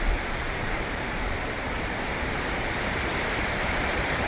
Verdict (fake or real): fake